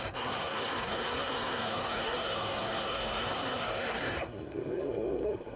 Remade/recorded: remade